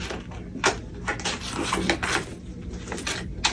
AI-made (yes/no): no